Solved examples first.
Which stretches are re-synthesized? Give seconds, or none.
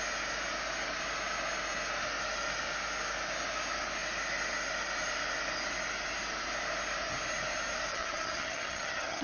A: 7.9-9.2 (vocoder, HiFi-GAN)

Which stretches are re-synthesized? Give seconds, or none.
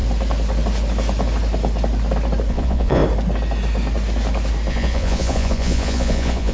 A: 2.5-3.0 (vocoder, Vocos); 4.7-6.5